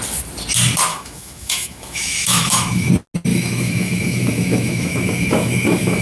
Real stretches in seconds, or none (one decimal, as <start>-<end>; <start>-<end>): 0.0-0.9; 2.9-3.3